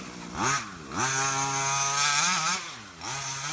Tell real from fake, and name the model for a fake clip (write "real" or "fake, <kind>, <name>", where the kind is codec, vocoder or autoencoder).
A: real